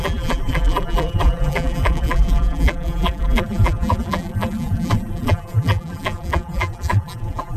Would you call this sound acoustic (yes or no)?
no